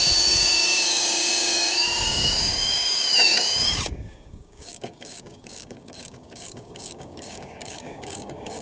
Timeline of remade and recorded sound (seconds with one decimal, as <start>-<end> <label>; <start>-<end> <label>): 0.0-8.6 remade